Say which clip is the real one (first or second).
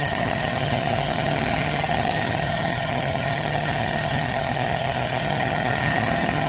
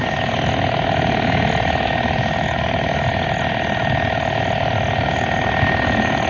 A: second